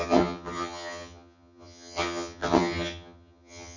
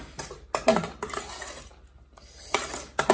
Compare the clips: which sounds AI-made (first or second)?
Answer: first